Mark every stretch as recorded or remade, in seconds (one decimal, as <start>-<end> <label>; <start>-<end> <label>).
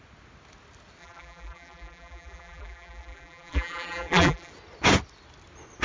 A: 0.0-1.0 recorded; 1.0-4.5 remade; 4.5-5.8 recorded